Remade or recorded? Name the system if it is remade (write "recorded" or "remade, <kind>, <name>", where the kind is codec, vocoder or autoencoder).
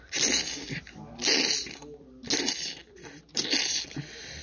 recorded